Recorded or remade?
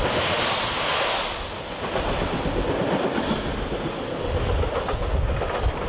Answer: recorded